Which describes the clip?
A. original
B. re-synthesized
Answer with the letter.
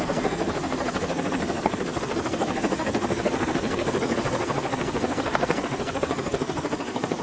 B